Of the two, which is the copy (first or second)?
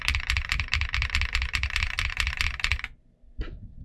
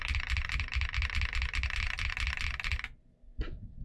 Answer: first